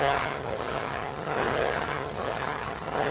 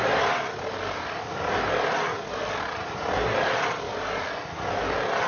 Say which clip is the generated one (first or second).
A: first